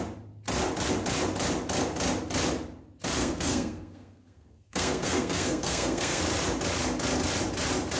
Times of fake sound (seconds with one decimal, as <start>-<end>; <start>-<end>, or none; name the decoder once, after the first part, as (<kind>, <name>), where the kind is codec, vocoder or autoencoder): 3.2-6.2 (codec, SNAC)